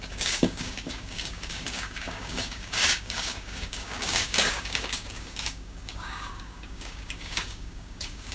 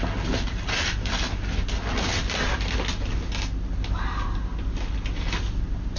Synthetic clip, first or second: first